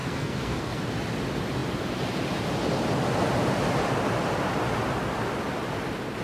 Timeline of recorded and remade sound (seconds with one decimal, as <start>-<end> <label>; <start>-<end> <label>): 0.0-0.8 remade; 0.8-6.2 recorded